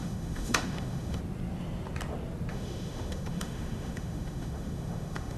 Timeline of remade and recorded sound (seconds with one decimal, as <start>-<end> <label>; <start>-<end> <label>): 0.0-1.2 remade; 1.2-2.5 recorded; 2.5-5.4 remade